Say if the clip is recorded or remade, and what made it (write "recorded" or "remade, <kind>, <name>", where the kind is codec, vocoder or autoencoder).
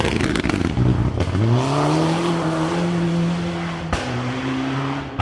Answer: recorded